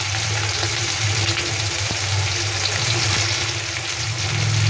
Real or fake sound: real